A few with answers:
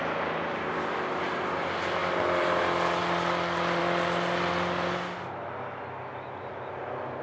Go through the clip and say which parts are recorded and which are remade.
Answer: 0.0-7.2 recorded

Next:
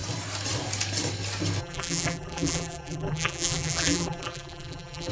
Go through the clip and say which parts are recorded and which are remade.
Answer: 0.0-1.6 recorded; 1.6-5.1 remade

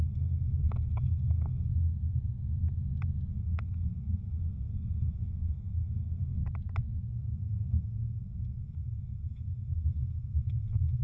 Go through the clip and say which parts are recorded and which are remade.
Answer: 0.0-1.7 remade; 1.7-3.3 recorded; 3.3-6.4 remade; 6.4-7.1 recorded; 7.1-11.0 remade

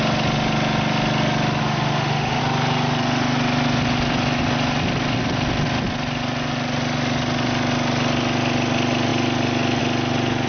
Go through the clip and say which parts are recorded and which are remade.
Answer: 0.0-1.6 recorded; 1.6-2.4 remade; 2.4-10.5 recorded

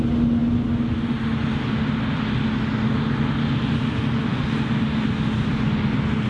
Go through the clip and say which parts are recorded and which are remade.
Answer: 0.0-6.3 recorded

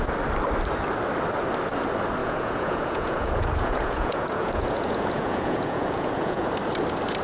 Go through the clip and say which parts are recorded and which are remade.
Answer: 0.0-2.2 recorded; 2.2-6.5 remade; 6.5-7.2 recorded

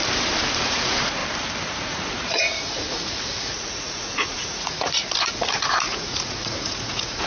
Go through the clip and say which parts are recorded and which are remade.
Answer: 0.0-0.6 recorded; 0.6-1.2 remade; 1.2-1.7 recorded; 1.7-7.3 remade